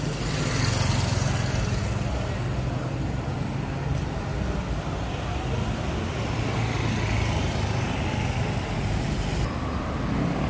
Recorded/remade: recorded